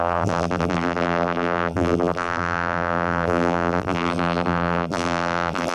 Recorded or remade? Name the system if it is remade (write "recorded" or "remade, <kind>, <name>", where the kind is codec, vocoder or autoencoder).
remade, vocoder, BigVGAN v2